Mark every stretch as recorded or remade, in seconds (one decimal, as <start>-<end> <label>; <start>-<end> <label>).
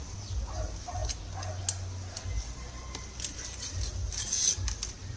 0.0-5.2 recorded